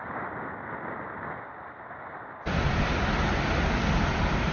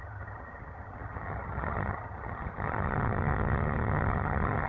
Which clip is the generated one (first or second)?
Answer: second